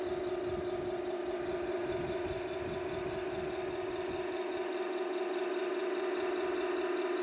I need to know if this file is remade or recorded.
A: recorded